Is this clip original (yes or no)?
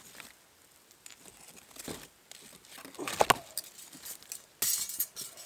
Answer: yes